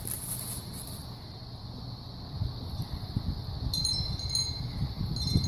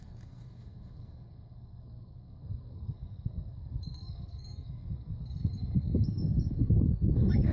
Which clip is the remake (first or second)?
second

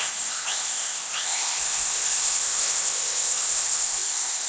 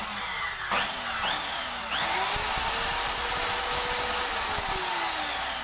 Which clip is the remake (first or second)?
first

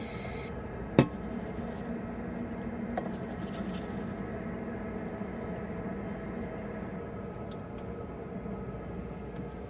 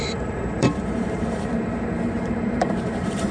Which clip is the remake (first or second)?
second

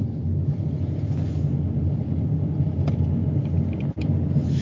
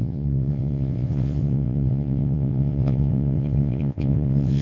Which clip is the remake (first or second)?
second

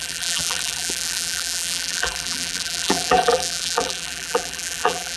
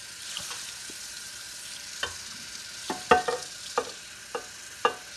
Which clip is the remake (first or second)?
first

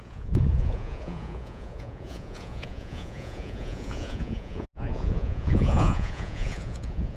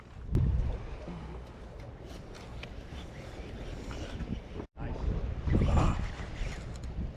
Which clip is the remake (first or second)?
first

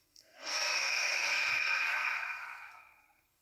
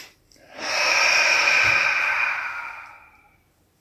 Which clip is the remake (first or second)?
first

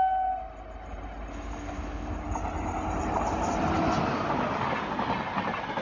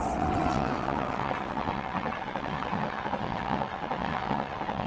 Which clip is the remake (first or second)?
second